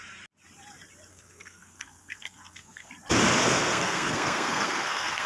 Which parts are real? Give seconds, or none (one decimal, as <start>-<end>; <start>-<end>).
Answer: 0.0-1.1; 2.9-3.4